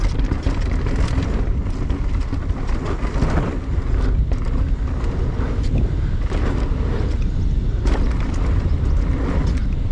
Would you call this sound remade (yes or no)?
no